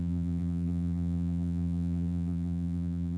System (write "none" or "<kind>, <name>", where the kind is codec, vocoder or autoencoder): vocoder, BigVGAN v2